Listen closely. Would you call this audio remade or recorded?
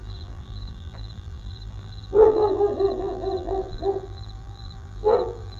remade